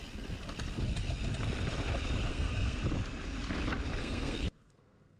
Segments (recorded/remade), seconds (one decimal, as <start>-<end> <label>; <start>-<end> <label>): 0.0-2.3 recorded; 2.3-2.8 remade; 2.8-4.0 recorded; 4.0-5.2 remade